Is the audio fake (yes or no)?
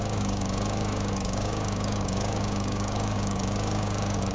yes